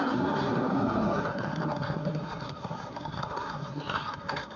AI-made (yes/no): yes